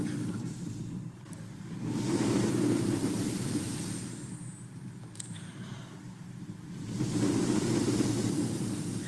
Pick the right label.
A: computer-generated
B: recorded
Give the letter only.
A